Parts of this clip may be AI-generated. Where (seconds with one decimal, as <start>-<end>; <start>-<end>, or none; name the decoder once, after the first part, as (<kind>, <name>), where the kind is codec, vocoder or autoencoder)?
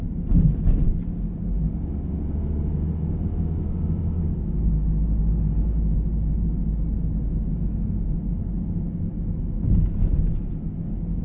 none